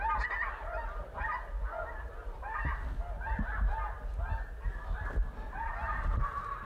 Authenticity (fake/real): real